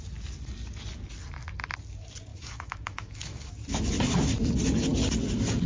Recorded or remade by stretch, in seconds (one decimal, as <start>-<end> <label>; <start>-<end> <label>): 0.0-2.3 recorded; 2.3-3.5 remade; 3.5-5.7 recorded